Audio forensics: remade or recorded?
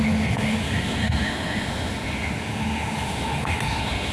remade